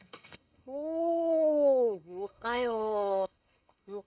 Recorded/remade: remade